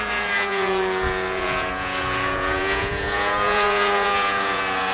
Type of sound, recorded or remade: remade